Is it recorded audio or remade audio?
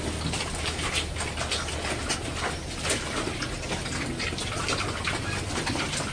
recorded